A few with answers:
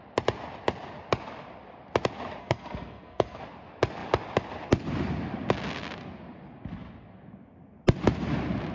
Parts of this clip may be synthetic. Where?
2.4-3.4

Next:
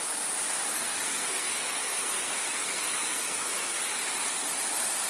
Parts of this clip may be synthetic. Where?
0.7-3.8